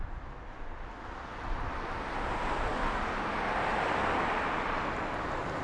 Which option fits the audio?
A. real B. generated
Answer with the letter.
A